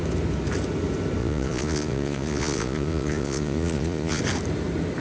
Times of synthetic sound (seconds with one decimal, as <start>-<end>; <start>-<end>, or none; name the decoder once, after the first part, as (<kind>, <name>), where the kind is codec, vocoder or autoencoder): 1.2-4.2 (vocoder, Vocos)